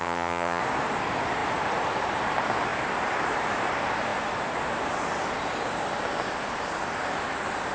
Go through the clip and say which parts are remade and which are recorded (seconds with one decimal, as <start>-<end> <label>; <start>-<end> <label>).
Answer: 0.0-0.6 remade; 0.6-7.7 recorded